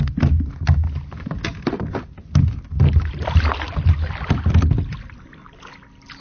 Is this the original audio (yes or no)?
yes